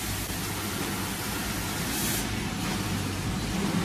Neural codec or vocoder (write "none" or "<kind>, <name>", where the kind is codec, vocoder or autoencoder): none